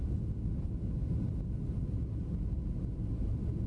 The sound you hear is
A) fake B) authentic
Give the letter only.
B